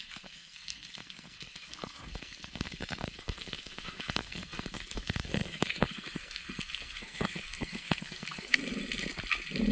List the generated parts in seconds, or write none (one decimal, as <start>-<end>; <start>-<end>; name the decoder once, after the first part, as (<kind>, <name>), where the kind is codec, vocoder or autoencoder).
0.0-8.6 (codec, SNAC)